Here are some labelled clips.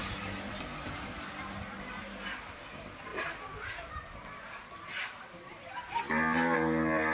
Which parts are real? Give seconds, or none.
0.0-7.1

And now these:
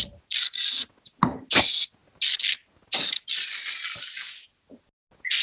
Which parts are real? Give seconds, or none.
0.0-5.4

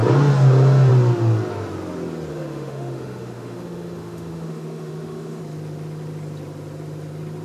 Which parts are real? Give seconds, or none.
0.0-2.3; 5.4-7.4